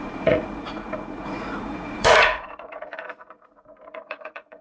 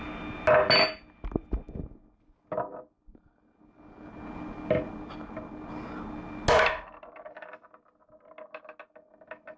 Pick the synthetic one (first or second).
first